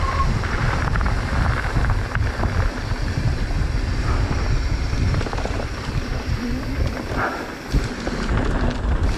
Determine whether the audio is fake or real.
real